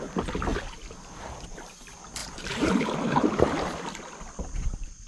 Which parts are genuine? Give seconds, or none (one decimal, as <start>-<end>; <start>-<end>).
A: 0.0-2.2; 3.5-5.1

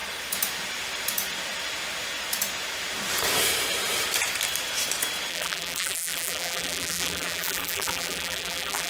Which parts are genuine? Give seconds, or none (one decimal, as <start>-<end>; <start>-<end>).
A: 0.0-5.3

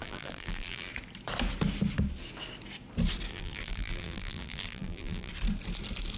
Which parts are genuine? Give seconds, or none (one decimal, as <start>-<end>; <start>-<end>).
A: 0.9-3.3; 5.3-6.2